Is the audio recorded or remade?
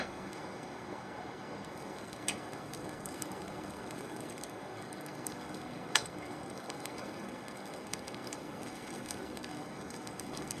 remade